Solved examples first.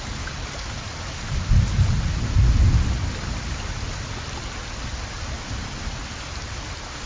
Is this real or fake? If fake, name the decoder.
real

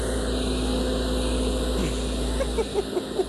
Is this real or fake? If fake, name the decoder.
real